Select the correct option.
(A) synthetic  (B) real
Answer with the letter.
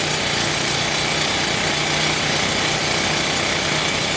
B